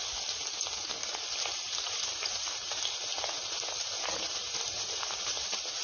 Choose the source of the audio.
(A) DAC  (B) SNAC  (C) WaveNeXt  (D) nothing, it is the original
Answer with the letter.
D